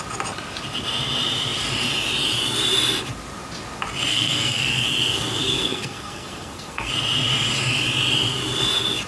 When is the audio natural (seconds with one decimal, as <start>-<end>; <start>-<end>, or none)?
0.0-4.1; 6.9-9.1